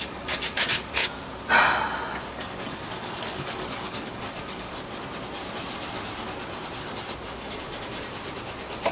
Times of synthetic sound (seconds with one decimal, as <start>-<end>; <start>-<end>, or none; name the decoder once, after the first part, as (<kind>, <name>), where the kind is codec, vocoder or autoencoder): 0.0-1.0 (codec, DAC); 2.3-4.7